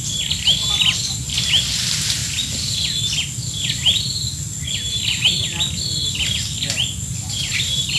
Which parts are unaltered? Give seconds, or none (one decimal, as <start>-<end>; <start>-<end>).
2.2-4.9